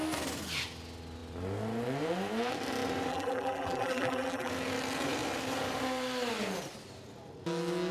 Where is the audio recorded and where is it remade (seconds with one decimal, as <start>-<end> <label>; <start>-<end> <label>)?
0.0-3.1 recorded; 3.1-4.5 remade; 4.5-7.9 recorded